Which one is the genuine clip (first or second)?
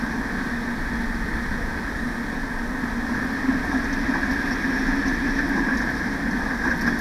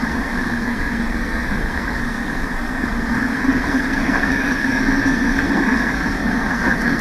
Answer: first